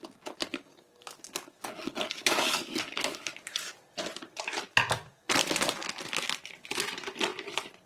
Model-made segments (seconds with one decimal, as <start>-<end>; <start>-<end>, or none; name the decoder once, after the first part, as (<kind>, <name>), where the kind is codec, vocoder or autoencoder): 0.7-3.7 (codec, DAC); 5.4-5.9